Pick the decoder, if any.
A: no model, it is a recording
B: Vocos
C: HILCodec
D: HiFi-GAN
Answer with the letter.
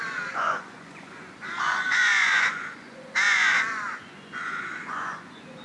B